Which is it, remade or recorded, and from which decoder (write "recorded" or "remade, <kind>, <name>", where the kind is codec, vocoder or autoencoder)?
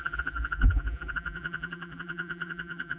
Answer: remade, vocoder, BigVGAN v2